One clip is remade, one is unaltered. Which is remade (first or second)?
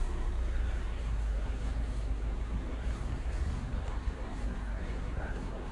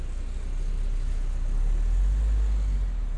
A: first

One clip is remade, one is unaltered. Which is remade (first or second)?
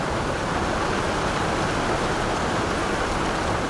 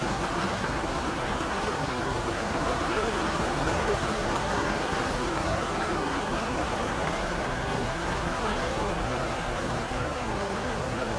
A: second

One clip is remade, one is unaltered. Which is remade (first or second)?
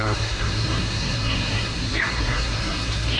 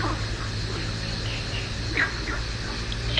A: first